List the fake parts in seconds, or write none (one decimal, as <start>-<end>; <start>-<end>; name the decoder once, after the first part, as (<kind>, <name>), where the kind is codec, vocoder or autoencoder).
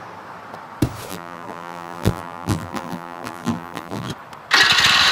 1.1-4.1 (vocoder, BigVGAN v2)